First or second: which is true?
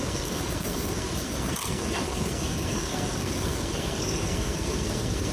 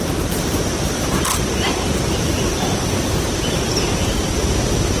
second